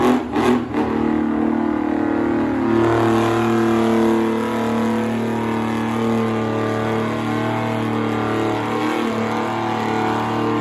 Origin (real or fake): real